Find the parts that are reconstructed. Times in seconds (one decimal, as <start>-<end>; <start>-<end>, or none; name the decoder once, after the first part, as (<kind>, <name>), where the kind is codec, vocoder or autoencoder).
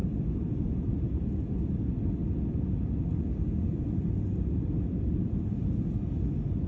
0.0-2.6 (vocoder, BigVGAN v2); 3.7-5.6